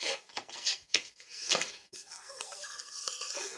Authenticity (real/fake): fake